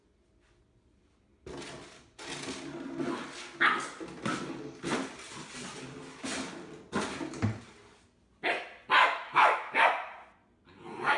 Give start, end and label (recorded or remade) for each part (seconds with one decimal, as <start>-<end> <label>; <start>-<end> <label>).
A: 0.0-9.0 recorded; 9.0-9.8 remade; 9.8-11.2 recorded